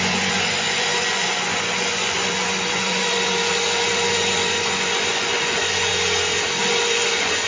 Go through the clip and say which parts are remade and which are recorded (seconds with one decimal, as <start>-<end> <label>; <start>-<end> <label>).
0.0-5.9 remade; 5.9-6.6 recorded; 6.6-7.5 remade